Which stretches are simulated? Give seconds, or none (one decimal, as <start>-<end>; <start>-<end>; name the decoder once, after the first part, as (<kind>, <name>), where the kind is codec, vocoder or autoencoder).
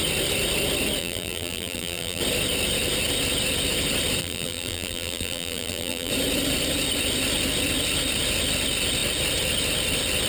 1.0-2.2 (vocoder, BigVGAN v2); 4.2-6.1